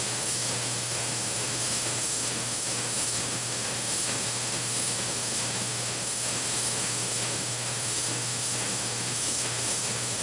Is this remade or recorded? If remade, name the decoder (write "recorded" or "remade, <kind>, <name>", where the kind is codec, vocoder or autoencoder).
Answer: remade, autoencoder, DAC-VAE